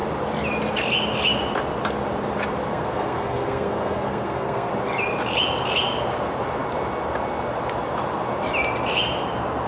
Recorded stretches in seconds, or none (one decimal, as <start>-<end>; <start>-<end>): 0.0-2.7; 4.7-9.7